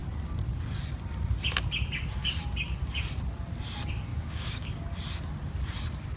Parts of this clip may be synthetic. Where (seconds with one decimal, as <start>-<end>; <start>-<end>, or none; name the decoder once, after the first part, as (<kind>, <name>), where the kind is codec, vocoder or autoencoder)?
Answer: 4.1-4.7 (codec, DAC)